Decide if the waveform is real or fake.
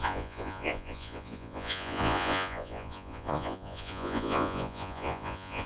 fake